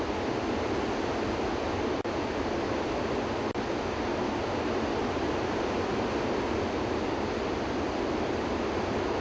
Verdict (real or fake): real